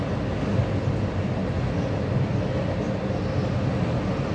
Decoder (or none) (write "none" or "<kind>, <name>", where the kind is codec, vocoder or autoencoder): none